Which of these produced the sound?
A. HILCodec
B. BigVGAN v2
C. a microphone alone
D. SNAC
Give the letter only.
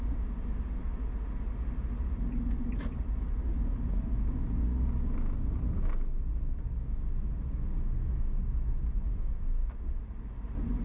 C